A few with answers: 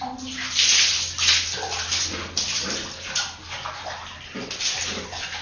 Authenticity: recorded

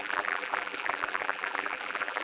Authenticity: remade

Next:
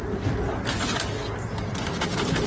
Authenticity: recorded